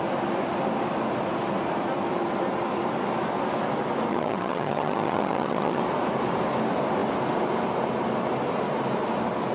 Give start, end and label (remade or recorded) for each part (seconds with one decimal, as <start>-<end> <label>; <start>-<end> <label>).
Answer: 0.0-4.1 recorded; 4.1-5.8 remade; 5.8-9.5 recorded